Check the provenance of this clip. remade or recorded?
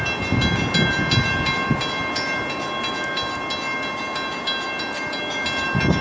recorded